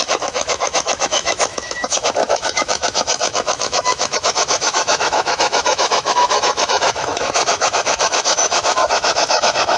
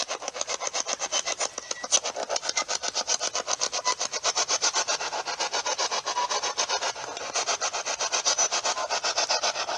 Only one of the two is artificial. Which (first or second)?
first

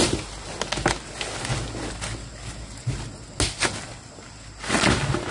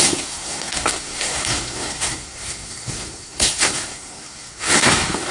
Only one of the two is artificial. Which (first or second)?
second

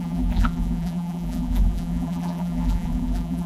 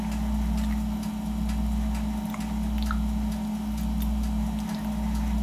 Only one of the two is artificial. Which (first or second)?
first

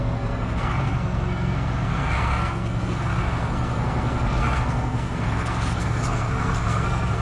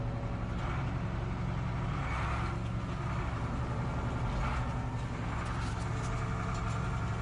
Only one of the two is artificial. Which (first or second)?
first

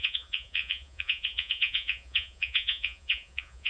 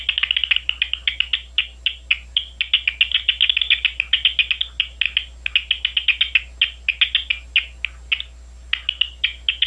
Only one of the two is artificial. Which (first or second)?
first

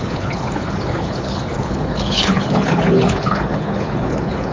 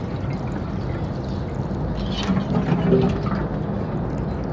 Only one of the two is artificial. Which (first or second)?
first